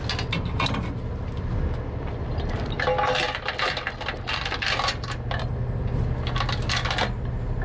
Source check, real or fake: real